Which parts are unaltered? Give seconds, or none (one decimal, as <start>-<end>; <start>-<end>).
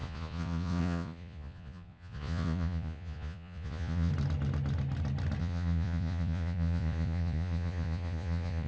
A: 4.1-5.4